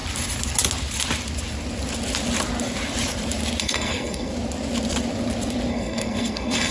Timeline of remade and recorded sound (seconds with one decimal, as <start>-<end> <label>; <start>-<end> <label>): 0.0-3.6 recorded; 3.6-4.3 remade; 4.3-5.7 recorded; 5.7-6.7 remade